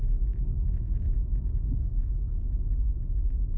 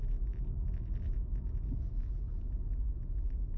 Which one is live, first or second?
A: second